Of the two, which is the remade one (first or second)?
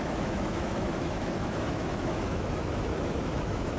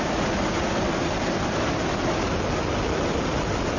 first